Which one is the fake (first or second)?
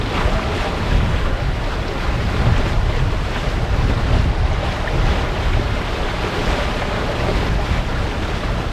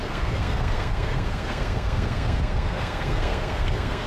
second